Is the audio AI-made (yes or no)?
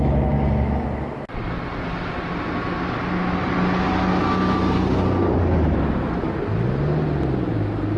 no